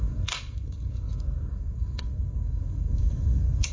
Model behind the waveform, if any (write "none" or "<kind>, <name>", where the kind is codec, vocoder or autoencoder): codec, SNAC